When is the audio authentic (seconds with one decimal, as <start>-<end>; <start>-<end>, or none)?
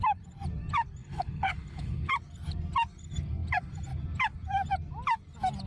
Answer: 0.0-1.0; 2.1-5.7